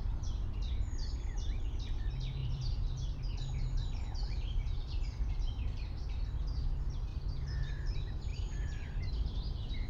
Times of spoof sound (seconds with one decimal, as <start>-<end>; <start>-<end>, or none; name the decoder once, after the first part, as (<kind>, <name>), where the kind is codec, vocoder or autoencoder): 2.4-6.1 (vocoder, BigVGAN v2); 8.3-9.9